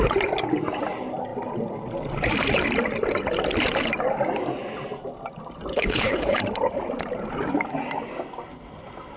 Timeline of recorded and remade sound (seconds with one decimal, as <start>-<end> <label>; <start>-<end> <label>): 0.0-5.7 recorded; 5.7-6.4 remade; 6.4-9.2 recorded